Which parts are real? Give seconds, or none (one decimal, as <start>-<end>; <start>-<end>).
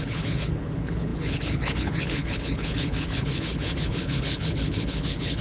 none